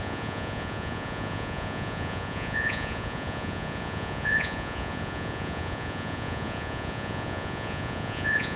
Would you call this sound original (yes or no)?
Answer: no